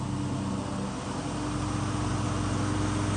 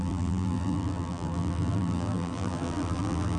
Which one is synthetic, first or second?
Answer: second